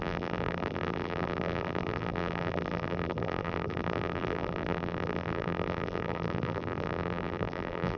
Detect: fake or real fake